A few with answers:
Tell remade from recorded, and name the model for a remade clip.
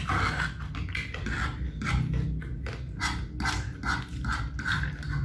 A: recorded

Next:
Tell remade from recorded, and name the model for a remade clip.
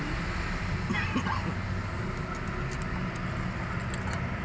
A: recorded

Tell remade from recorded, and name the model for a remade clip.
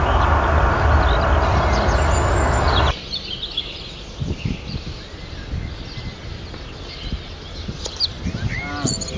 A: recorded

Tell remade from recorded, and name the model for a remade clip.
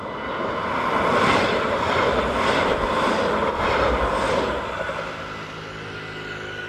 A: recorded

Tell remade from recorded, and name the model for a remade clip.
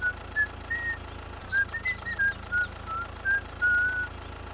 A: recorded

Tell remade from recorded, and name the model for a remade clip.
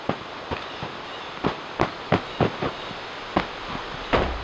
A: recorded